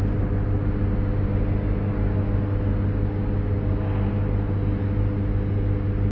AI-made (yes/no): no